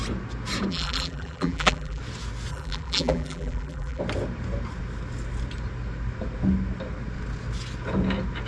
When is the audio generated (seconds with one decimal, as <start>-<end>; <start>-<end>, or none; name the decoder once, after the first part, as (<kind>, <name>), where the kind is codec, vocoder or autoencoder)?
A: 0.7-2.0 (vocoder, BigVGAN v2); 2.5-4.0